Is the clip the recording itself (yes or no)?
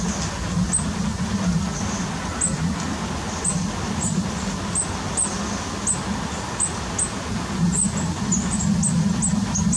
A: yes